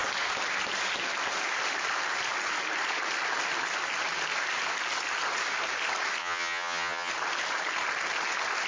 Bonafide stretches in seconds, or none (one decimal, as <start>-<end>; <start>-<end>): 0.0-6.2; 7.1-8.7